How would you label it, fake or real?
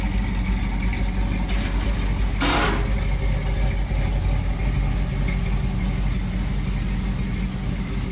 real